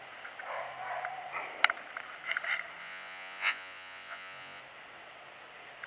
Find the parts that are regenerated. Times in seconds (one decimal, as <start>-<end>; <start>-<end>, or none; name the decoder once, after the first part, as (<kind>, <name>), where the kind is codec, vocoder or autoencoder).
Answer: 2.8-4.6 (vocoder, Vocos)